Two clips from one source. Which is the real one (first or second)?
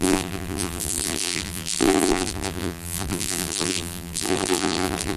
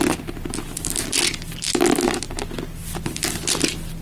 second